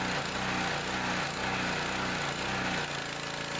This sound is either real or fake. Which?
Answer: real